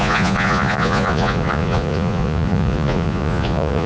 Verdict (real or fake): fake